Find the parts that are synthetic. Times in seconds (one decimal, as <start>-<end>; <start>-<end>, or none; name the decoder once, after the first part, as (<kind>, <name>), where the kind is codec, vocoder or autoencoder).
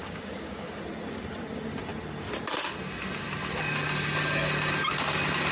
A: 0.0-0.7 (codec, DAC)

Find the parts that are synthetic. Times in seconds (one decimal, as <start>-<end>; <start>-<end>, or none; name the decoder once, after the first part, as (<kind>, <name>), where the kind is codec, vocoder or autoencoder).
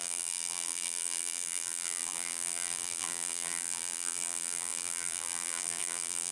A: 0.0-6.3 (vocoder, BigVGAN v2)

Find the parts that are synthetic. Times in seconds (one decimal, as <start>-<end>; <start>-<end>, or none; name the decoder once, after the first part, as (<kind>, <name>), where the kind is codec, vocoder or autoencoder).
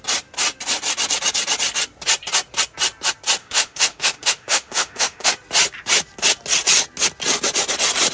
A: 3.4-5.3 (autoencoder, DAC-VAE)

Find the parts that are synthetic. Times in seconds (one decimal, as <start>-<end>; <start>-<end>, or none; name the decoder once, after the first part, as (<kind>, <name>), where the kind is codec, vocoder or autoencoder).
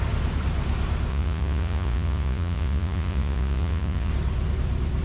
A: 1.1-4.1 (vocoder, Vocos)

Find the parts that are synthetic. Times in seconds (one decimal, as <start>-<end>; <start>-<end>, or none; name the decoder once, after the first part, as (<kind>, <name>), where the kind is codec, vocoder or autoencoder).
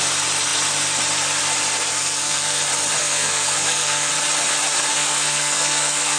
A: 1.9-2.6 (codec, SNAC); 3.0-4.1; 4.9-6.2